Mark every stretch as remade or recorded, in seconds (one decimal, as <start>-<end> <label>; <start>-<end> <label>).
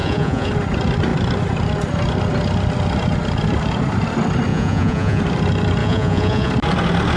0.0-0.5 remade; 0.5-4.5 recorded; 4.5-5.2 remade; 5.2-5.8 recorded; 5.8-6.5 remade; 6.5-7.2 recorded